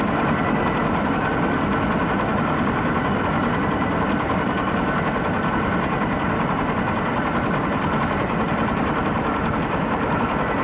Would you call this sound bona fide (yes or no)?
yes